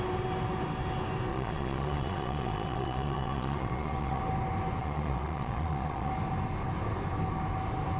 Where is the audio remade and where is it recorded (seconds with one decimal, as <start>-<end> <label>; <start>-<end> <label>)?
0.0-1.3 recorded; 1.3-4.2 remade; 4.2-4.8 recorded; 4.8-6.1 remade; 6.1-8.0 recorded

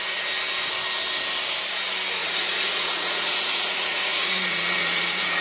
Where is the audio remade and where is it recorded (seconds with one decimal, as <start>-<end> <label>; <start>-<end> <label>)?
0.0-2.2 recorded; 2.2-5.4 remade

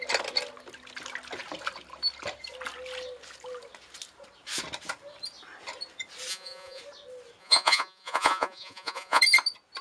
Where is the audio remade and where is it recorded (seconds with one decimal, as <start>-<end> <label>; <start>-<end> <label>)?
0.0-6.3 recorded; 6.3-6.8 remade; 6.8-7.4 recorded; 7.4-9.2 remade; 9.2-9.8 recorded

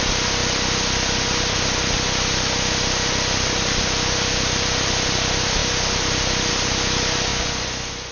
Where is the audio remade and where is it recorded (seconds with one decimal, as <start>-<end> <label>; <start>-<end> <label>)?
0.0-7.3 recorded; 7.3-8.1 remade

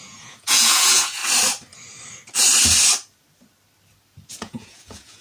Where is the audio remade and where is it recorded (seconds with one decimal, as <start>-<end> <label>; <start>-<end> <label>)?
0.0-1.2 remade; 1.2-4.3 recorded; 4.3-5.2 remade

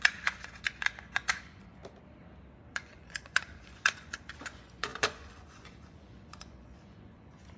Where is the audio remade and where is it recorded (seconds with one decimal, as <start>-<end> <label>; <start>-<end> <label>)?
0.0-1.8 remade; 1.8-2.7 recorded; 2.7-7.6 remade